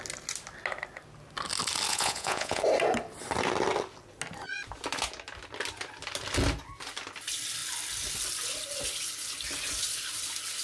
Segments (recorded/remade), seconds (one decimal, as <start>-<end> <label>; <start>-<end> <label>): 0.0-1.9 recorded; 1.9-2.6 remade; 2.6-10.6 recorded